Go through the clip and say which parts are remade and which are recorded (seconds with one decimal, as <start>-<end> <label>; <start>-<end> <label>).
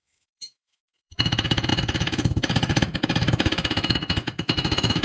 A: 0.0-5.0 remade